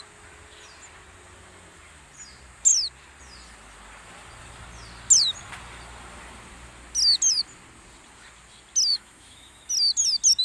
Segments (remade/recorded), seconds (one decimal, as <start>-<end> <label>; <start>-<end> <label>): 0.0-8.9 recorded; 8.9-9.7 remade; 9.7-10.4 recorded